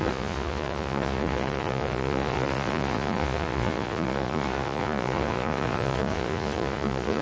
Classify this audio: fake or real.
fake